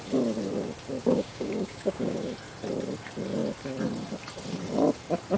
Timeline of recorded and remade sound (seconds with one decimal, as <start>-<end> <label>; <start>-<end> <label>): 0.0-1.0 recorded; 1.0-2.2 remade; 2.2-5.4 recorded

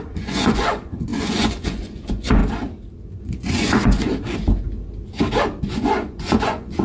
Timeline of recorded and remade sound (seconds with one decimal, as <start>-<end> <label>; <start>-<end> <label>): 0.0-2.4 remade; 2.4-3.2 recorded; 3.2-4.1 remade; 4.1-5.6 recorded; 5.6-6.8 remade

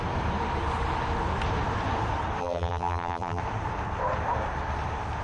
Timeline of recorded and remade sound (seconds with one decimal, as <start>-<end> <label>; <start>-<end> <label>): 0.0-2.4 recorded; 2.4-3.4 remade; 3.4-5.2 recorded

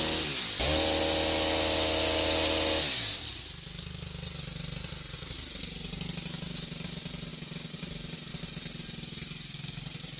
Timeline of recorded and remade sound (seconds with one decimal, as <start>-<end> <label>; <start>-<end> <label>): 0.0-10.2 recorded

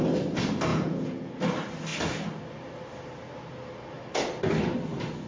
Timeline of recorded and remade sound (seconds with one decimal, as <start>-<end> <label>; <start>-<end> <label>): 0.0-0.7 recorded; 0.7-1.3 remade; 1.3-5.3 recorded

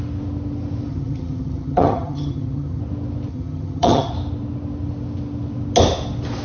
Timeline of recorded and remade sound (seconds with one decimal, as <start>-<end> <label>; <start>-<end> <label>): 0.0-0.9 recorded; 0.9-2.8 remade; 2.8-3.3 recorded; 3.3-4.1 remade; 4.1-6.4 recorded

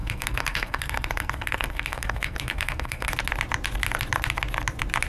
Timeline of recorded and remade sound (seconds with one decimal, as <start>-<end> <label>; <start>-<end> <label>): 0.0-3.1 remade; 3.1-5.1 recorded

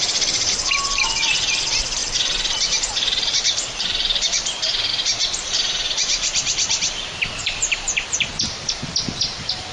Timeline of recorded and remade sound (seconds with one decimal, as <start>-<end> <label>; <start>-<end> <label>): 0.0-2.0 remade; 2.0-2.9 recorded; 2.9-9.7 remade